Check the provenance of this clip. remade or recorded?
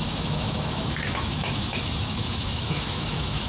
remade